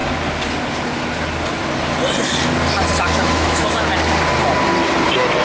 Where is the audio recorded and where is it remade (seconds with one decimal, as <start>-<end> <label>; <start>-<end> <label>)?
0.0-3.0 recorded; 3.0-3.9 remade; 3.9-5.4 recorded